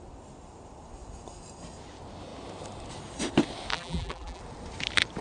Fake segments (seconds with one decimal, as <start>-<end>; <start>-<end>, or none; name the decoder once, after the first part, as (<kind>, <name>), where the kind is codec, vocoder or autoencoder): 3.7-4.4 (vocoder, BigVGAN v2)